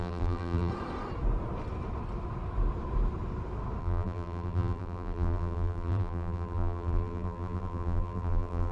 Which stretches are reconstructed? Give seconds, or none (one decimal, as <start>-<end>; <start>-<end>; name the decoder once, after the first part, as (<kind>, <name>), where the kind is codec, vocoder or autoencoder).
0.0-0.7 (vocoder, BigVGAN v2); 3.8-8.7

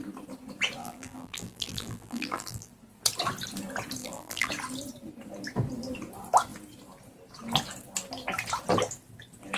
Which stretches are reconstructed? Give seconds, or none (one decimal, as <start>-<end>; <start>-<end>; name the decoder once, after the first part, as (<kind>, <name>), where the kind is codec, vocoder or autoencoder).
0.8-2.7 (vocoder, BigVGAN v2); 4.0-4.5

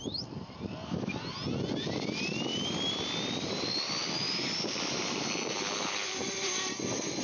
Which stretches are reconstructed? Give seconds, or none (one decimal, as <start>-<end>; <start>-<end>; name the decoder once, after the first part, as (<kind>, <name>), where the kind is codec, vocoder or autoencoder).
2.5-3.5 (vocoder, BigVGAN v2); 4.0-7.2

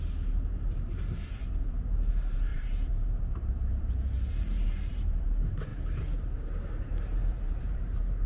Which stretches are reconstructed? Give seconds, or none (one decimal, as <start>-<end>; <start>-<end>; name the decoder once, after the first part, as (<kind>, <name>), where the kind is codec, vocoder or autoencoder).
0.0-8.3 (vocoder, BigVGAN v2)

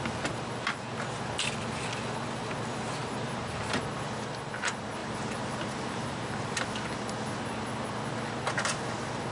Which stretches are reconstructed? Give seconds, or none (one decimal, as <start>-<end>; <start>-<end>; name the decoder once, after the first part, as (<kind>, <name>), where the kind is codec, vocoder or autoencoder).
3.0-3.8 (vocoder, BigVGAN v2); 5.0-6.6

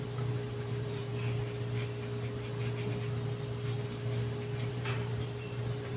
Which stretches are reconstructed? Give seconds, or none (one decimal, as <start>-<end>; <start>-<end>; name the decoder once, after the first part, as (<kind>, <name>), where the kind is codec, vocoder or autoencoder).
0.0-1.1 (vocoder, BigVGAN v2); 4.7-6.0

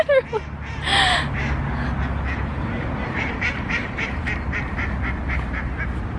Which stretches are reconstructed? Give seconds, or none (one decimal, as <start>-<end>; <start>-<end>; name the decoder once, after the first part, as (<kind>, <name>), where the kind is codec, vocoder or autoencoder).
0.9-1.6 (vocoder, BigVGAN v2); 2.5-6.2

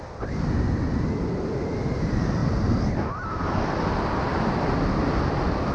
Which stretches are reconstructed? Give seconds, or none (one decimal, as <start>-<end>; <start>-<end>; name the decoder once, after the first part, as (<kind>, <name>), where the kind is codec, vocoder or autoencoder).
none